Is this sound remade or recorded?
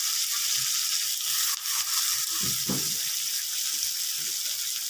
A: recorded